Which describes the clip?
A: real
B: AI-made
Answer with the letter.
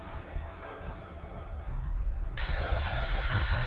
B